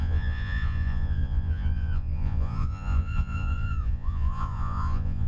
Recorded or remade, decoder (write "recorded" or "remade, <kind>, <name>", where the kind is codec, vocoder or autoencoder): remade, vocoder, Vocos